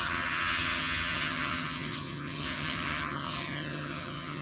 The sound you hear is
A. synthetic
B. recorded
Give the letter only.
A